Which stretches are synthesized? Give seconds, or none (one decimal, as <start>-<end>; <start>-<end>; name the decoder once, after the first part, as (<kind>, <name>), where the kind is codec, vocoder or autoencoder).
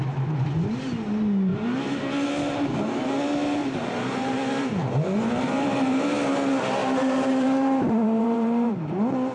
3.6-4.4 (vocoder, BigVGAN v2); 6.8-8.7